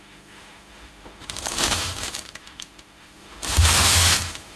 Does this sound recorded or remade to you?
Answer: remade